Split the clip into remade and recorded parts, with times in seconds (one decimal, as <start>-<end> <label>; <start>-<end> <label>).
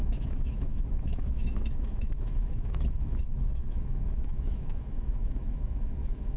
0.0-6.4 remade